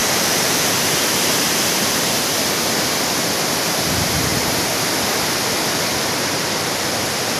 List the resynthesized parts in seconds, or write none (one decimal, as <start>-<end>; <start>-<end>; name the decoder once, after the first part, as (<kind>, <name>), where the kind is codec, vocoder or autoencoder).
0.0-2.2 (vocoder, BigVGAN v2)